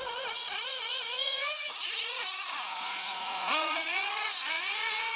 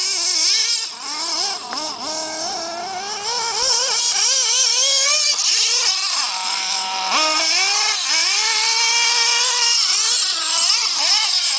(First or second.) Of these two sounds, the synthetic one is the first